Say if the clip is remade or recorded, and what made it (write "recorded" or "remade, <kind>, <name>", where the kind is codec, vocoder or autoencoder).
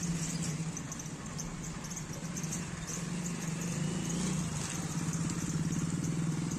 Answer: recorded